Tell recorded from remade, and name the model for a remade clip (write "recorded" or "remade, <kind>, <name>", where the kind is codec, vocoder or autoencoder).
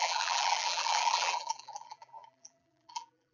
remade, vocoder, BigVGAN v2